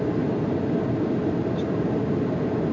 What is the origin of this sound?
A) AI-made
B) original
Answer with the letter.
B